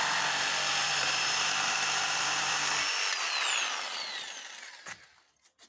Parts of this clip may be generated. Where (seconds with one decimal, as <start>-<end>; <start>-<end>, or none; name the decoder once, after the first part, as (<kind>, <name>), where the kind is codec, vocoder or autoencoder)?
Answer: 0.8-2.7 (vocoder, BigVGAN v2)

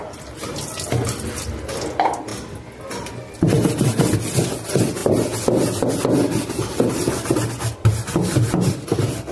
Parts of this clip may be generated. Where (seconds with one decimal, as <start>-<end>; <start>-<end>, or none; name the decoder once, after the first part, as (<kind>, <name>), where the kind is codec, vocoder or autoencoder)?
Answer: none

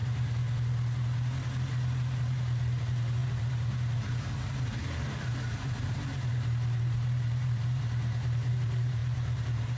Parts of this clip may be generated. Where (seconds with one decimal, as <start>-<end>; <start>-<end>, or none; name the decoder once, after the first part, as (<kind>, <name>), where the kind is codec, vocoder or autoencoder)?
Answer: 2.0-9.8 (vocoder, BigVGAN v2)